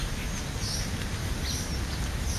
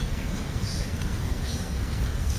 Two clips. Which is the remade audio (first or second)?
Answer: second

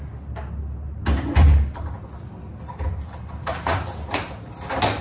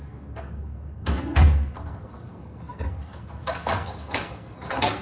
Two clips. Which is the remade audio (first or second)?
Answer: second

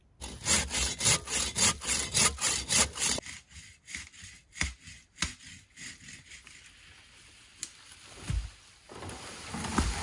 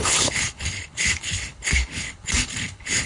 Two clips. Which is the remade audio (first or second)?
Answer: second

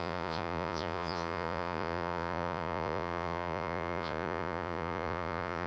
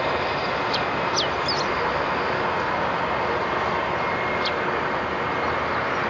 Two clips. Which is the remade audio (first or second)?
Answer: first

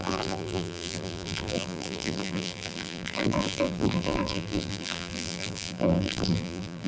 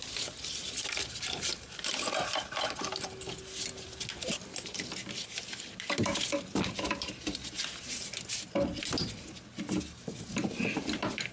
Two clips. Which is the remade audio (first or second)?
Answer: first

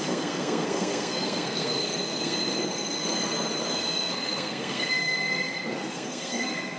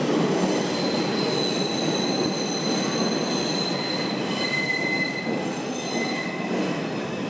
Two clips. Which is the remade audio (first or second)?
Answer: first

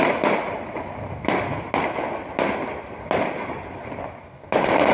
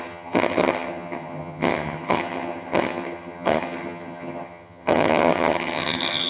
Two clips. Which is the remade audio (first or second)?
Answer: second